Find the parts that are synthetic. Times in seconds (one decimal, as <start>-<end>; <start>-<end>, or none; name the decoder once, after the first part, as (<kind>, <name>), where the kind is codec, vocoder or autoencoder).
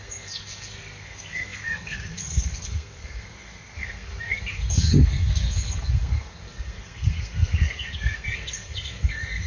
0.0-9.5 (codec, SNAC)